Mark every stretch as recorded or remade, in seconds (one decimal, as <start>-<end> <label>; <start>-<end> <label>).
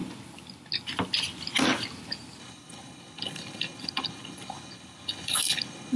0.0-2.4 recorded; 2.4-6.0 remade